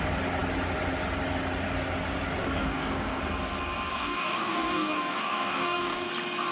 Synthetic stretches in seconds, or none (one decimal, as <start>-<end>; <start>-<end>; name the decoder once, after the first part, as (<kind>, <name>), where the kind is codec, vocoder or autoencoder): 2.4-3.2 (codec, DAC); 3.9-6.1